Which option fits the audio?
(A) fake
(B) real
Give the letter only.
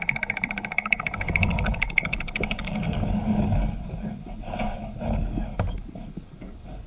A